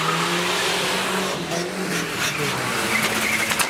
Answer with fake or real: real